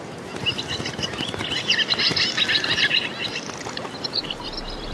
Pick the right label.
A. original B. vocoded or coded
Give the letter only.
A